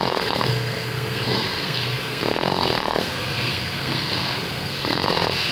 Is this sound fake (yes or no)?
yes